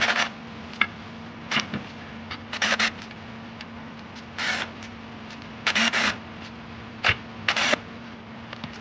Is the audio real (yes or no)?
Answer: yes